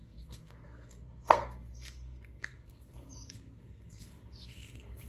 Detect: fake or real fake